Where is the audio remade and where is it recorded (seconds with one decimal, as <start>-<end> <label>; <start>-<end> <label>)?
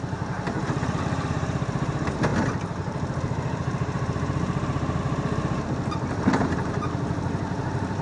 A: 0.0-8.0 remade